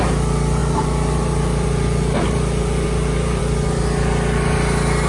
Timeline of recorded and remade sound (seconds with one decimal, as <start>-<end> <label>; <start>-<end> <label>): 0.0-0.6 recorded; 0.6-3.4 remade; 3.4-5.1 recorded